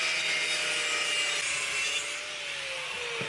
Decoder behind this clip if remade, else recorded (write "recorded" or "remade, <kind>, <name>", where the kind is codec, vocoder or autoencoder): recorded